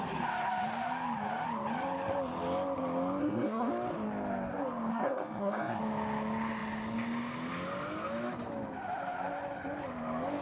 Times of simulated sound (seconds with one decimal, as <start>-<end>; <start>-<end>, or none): 3.2-3.7; 4.9-5.8